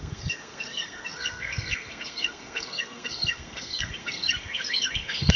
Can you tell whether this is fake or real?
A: fake